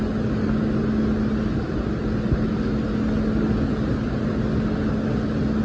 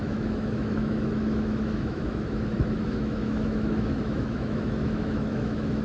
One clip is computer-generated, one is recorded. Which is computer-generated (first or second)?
second